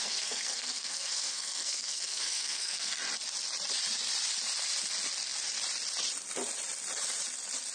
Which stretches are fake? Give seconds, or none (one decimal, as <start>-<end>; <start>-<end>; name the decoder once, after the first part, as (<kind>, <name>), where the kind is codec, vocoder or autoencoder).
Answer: 0.0-3.0 (codec, SNAC)